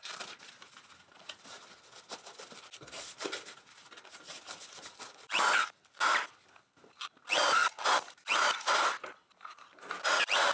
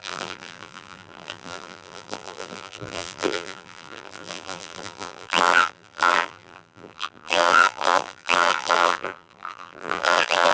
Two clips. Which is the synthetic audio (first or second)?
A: second